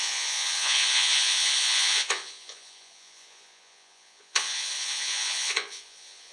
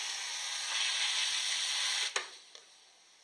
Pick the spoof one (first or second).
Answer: first